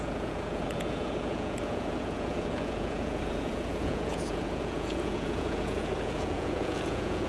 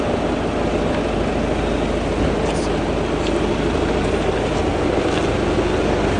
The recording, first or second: second